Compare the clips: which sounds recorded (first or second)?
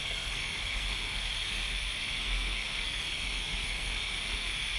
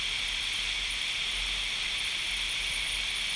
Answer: second